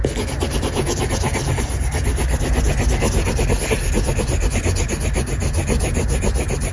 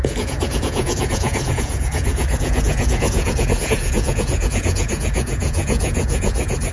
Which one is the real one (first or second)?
first